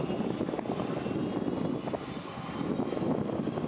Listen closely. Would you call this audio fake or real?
real